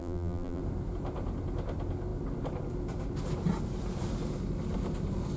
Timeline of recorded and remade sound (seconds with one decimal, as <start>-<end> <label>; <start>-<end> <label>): 0.0-0.6 remade; 0.6-5.4 recorded